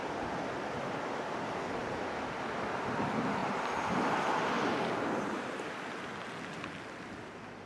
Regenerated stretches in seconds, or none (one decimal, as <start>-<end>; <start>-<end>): 3.4-5.8